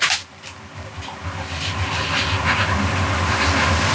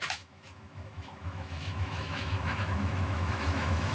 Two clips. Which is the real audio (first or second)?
first